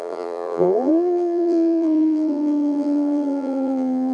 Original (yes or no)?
no